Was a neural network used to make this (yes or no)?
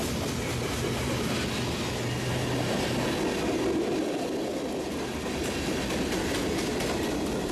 no